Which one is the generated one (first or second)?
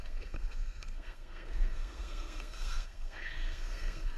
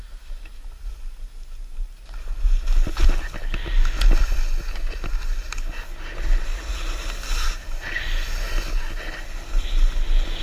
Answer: first